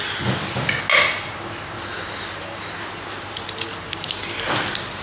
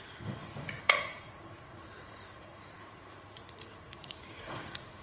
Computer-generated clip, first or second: second